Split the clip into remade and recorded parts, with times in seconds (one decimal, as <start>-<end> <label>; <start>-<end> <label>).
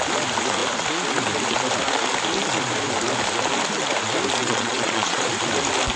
0.0-4.4 recorded; 4.4-5.3 remade; 5.3-6.0 recorded